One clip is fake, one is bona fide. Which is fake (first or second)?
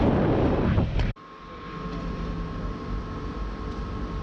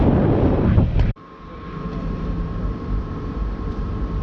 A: second